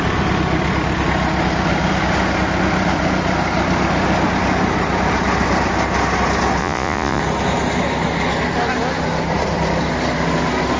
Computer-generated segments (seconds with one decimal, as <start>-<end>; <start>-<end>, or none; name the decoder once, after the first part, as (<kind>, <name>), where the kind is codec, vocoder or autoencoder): 6.6-7.2 (vocoder, Vocos)